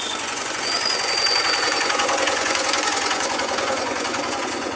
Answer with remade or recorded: remade